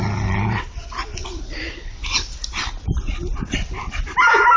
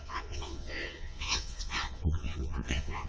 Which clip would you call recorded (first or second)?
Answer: first